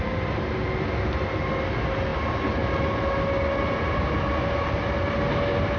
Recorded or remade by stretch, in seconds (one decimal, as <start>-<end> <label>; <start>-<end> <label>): 0.0-5.8 recorded